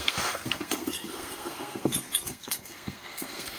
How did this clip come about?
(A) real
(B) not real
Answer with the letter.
B